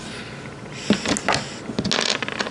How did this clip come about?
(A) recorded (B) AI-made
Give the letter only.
A